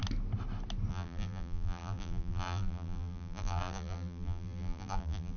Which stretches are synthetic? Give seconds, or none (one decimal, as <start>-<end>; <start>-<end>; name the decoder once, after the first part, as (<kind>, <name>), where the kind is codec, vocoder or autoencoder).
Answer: 0.9-5.4 (vocoder, BigVGAN v2)